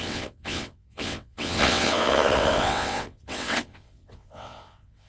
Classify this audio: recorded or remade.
remade